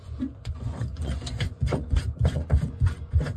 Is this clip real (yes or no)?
no